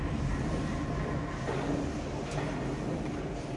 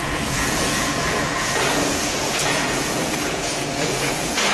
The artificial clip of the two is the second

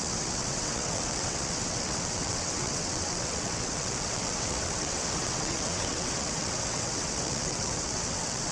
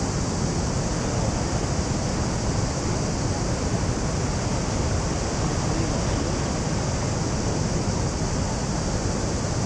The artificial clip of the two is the first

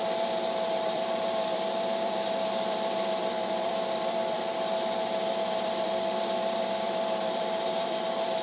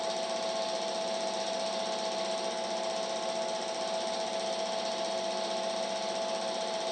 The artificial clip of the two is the first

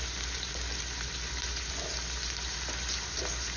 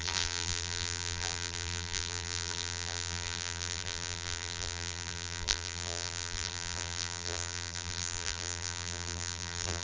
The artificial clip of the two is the second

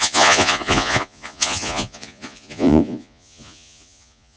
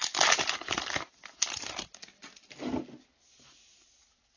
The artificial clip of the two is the first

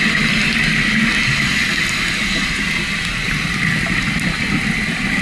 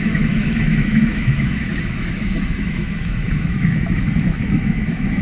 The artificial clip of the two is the second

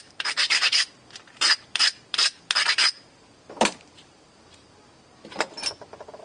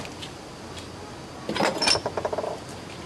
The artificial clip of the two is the first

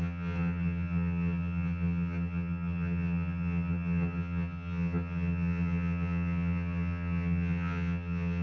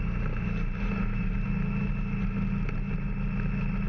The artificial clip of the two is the first